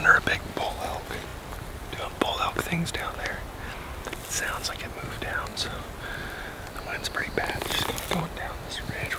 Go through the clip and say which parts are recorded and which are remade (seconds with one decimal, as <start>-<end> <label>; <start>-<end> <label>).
0.0-9.2 recorded